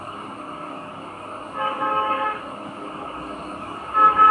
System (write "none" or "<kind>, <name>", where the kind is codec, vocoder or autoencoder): codec, DAC